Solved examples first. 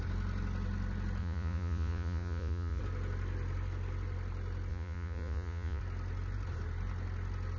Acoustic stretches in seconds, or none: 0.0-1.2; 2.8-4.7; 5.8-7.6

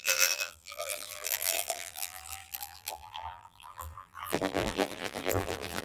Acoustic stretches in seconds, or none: none